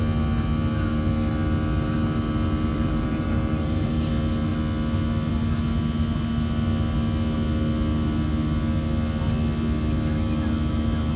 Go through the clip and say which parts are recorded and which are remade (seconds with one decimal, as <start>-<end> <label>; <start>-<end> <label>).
0.0-2.7 recorded; 2.7-4.1 remade; 4.1-11.2 recorded